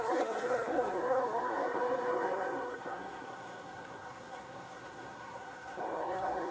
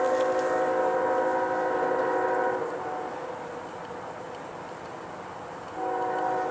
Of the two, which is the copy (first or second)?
first